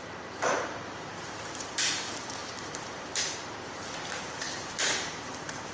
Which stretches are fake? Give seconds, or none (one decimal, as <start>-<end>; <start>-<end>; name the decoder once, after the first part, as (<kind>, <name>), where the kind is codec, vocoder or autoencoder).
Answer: 0.0-5.7 (vocoder, BigVGAN v2)